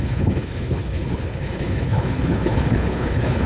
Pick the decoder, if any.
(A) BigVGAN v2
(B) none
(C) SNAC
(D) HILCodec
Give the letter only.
D